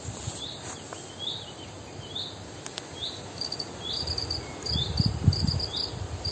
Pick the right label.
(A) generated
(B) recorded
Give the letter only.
A